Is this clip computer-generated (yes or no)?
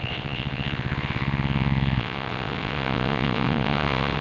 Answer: yes